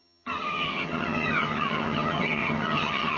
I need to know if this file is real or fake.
fake